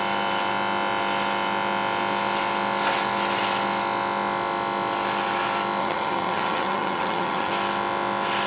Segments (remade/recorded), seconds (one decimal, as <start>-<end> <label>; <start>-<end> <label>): 0.0-5.8 recorded; 5.8-7.5 remade; 7.5-8.5 recorded